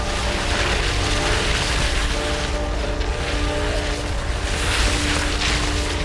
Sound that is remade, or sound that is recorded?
recorded